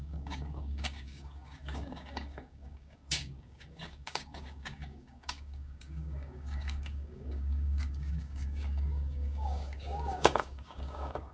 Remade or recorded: remade